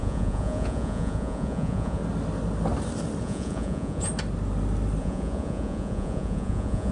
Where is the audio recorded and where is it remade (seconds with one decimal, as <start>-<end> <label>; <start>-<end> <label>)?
0.0-2.0 remade; 2.0-3.2 recorded; 3.2-4.1 remade; 4.1-5.0 recorded; 5.0-6.9 remade